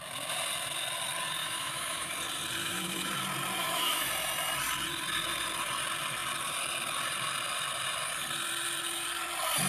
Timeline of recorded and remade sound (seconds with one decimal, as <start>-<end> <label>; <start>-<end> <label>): 0.0-1.4 recorded; 1.4-2.1 remade; 2.1-2.6 recorded; 2.6-3.1 remade; 3.1-3.6 recorded; 3.6-4.1 remade; 4.1-9.7 recorded